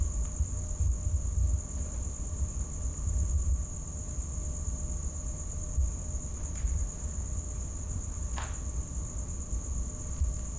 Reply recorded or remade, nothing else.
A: recorded